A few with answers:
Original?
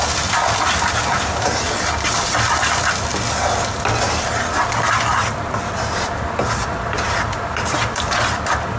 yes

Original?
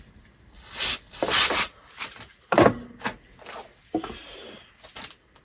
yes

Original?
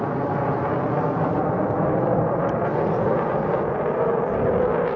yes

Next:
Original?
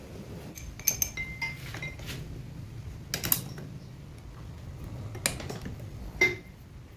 yes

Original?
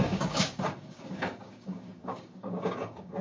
no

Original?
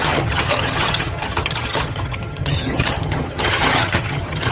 no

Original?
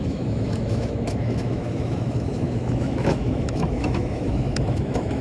no